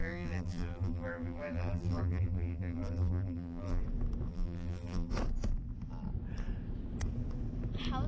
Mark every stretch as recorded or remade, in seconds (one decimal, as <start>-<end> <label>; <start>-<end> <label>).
0.0-3.8 remade; 3.8-4.3 recorded; 4.3-5.1 remade; 5.1-8.1 recorded